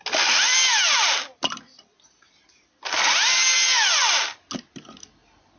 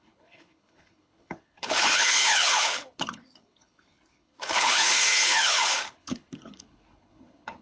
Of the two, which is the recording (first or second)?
first